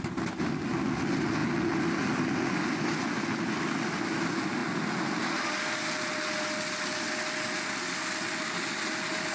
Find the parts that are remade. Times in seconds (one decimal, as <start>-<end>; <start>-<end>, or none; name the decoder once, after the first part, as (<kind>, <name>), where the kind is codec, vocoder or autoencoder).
none